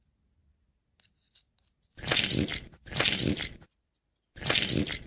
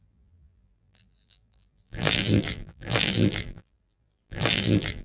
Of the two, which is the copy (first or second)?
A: second